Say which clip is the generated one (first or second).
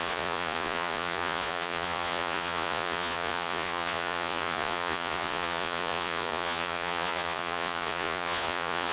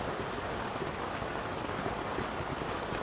first